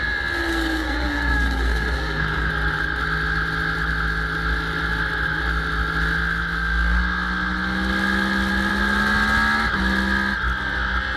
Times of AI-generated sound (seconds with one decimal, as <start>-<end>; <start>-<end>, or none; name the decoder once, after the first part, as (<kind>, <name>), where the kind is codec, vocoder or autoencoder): 0.5-2.5 (codec, SNAC)